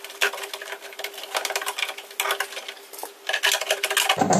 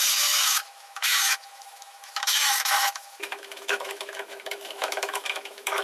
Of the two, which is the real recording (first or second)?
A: first